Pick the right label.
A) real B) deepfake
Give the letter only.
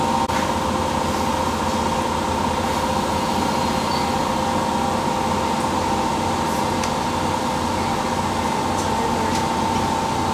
A